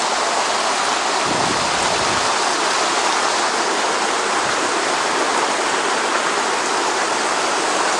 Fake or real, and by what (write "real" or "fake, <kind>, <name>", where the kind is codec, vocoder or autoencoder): real